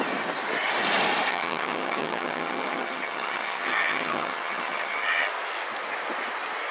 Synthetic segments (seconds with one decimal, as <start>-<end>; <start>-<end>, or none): 1.3-5.3